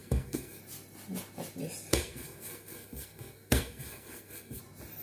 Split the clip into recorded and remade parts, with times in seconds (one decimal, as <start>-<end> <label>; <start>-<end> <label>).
0.0-0.6 remade; 0.6-1.9 recorded; 1.9-4.6 remade; 4.6-5.0 recorded